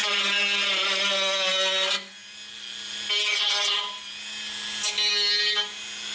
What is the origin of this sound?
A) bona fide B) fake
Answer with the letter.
A